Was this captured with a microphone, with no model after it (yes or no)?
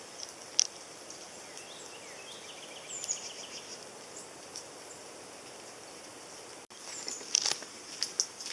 yes